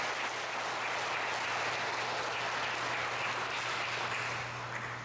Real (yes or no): yes